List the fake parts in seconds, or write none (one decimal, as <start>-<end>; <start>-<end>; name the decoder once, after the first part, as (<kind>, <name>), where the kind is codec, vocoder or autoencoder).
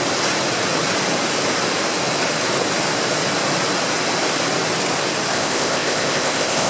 5.3-6.7 (codec, ZipCodec)